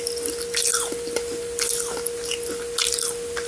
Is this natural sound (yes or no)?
yes